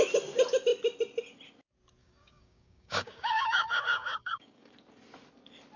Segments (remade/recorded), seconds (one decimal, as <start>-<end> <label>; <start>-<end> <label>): 0.0-2.0 recorded; 2.0-4.7 remade; 4.7-5.8 recorded